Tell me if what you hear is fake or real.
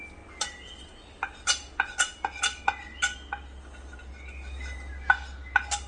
real